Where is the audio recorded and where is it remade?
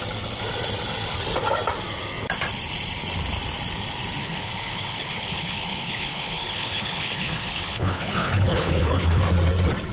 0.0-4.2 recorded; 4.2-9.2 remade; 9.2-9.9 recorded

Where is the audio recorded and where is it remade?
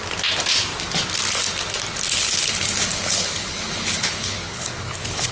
0.0-2.1 recorded; 2.1-5.3 remade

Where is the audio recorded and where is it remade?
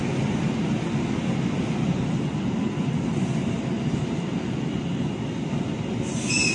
0.0-6.5 recorded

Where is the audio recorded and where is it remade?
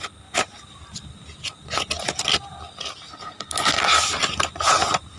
0.0-3.1 recorded; 3.1-3.8 remade; 3.8-5.2 recorded